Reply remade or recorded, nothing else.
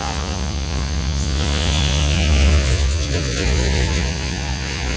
remade